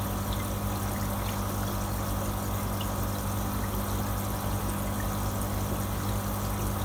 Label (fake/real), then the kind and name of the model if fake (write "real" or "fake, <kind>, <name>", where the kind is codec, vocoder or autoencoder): real